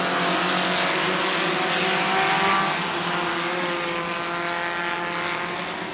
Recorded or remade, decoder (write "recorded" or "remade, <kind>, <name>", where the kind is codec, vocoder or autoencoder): recorded